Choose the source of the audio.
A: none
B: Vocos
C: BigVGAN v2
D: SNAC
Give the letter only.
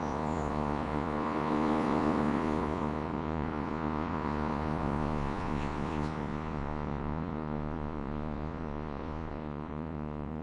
B